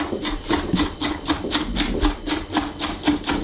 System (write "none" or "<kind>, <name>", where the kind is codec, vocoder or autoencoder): none